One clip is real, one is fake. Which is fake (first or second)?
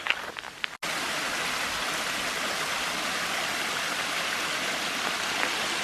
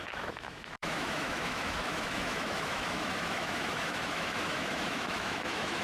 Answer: second